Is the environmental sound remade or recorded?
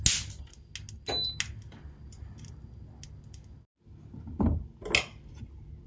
recorded